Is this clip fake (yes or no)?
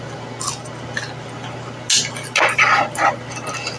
no